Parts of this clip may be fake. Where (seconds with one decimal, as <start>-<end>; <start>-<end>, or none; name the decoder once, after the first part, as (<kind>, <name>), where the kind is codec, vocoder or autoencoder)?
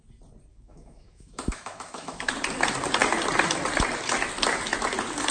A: 0.5-2.3 (autoencoder, DAC-VAE)